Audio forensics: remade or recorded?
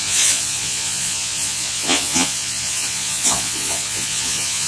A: remade